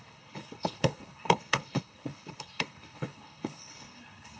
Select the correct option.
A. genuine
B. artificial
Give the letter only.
B